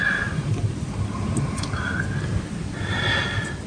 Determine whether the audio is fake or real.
real